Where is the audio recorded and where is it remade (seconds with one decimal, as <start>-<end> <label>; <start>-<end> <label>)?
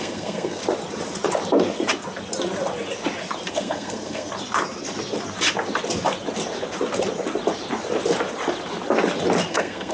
0.0-0.6 remade; 0.6-3.5 recorded; 3.5-4.3 remade; 4.3-9.5 recorded; 9.5-9.9 remade